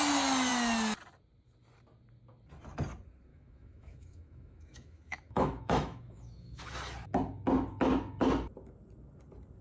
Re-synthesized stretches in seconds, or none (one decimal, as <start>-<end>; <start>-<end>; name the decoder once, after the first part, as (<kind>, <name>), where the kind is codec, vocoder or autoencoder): 3.3-6.6 (autoencoder, DAC-VAE)